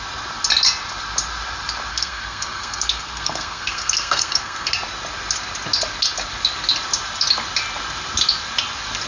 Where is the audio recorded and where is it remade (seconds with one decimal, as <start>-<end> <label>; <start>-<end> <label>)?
0.0-1.9 recorded; 1.9-4.7 remade; 4.7-9.1 recorded